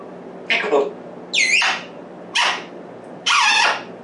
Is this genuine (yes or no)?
yes